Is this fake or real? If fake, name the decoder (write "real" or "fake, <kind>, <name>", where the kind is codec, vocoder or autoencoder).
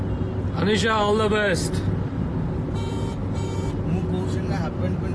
real